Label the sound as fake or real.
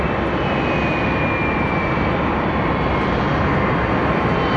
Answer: real